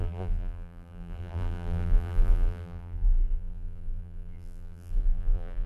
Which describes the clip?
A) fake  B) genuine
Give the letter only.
A